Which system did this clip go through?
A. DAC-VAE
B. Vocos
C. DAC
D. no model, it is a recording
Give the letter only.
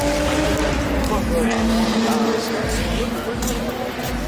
D